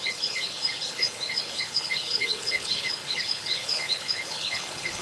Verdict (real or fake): fake